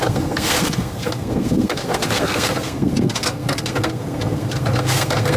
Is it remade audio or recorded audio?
remade